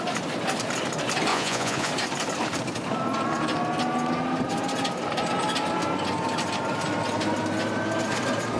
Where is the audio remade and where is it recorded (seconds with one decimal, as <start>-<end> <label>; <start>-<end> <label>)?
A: 0.0-1.3 recorded; 1.3-1.9 remade; 1.9-8.6 recorded